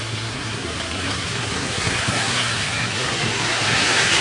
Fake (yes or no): yes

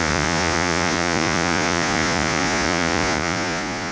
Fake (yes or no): yes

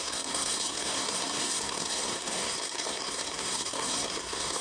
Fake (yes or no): yes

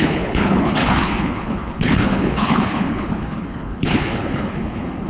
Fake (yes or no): yes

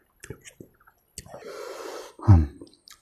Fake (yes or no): no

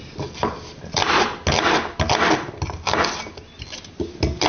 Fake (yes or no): no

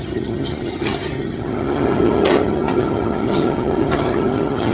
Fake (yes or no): yes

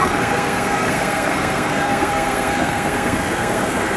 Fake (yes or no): yes